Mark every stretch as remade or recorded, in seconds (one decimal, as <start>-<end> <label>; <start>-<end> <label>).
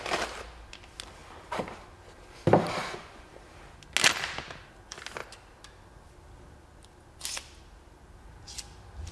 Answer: 0.0-2.8 recorded; 2.8-3.3 remade; 3.3-9.1 recorded